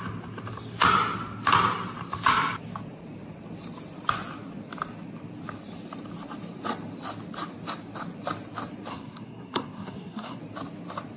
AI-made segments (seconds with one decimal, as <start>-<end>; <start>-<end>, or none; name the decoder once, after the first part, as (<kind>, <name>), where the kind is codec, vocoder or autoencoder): 8.9-10.4 (codec, SNAC)